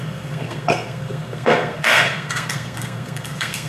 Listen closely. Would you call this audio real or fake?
fake